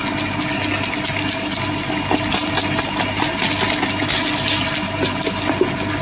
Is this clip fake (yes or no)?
no